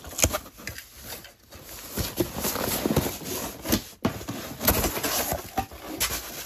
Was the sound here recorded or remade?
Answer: recorded